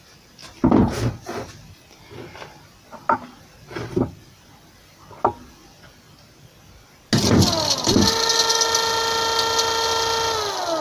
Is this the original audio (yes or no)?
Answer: yes